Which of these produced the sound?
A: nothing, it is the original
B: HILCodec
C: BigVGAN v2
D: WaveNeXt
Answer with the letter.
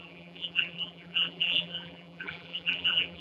C